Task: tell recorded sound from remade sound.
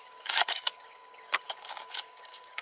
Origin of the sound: remade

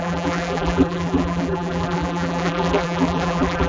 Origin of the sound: remade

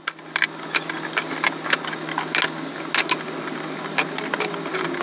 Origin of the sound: recorded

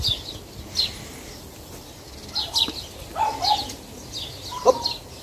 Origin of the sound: recorded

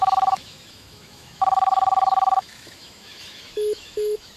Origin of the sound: remade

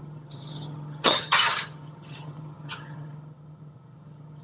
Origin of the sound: remade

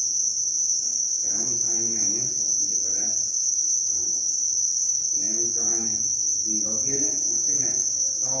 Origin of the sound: remade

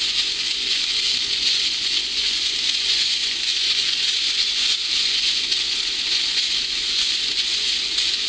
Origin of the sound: remade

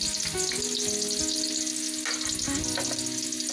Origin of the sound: recorded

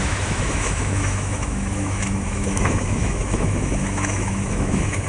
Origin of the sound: remade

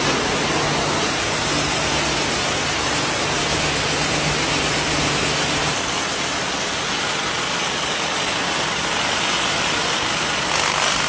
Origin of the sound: recorded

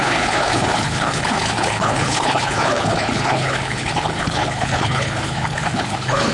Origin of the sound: remade